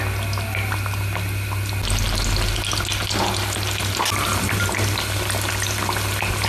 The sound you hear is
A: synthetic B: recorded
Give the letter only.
B